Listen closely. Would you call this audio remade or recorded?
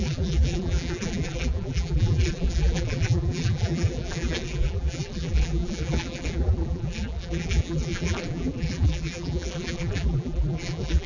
remade